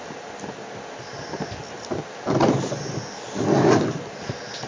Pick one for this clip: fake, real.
real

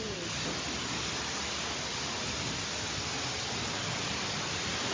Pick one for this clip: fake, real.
real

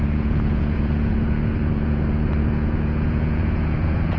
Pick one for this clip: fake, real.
fake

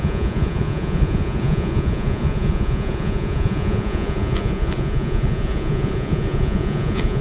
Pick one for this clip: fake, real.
fake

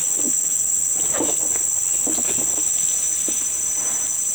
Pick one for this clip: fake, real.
real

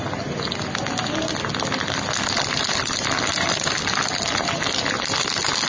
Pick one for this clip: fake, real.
real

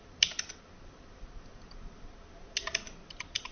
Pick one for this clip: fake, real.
real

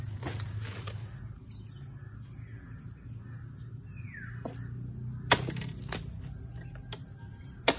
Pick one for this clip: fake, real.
real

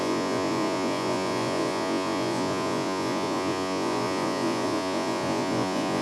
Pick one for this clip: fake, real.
fake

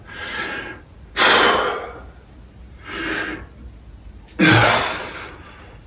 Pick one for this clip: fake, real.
real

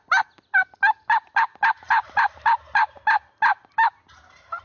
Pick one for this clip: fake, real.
real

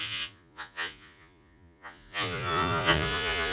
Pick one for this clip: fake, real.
fake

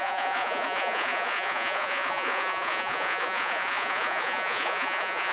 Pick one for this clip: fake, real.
fake